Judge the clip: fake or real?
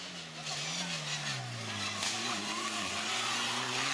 real